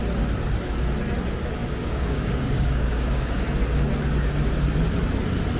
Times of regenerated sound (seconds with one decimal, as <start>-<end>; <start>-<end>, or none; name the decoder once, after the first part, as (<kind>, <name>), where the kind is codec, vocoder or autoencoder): 1.6-3.4 (codec, DAC)